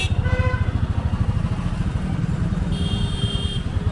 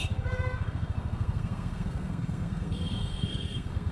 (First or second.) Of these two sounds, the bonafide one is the first